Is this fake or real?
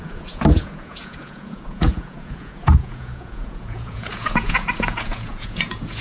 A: fake